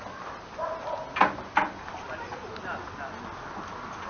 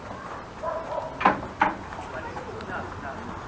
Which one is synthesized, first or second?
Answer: second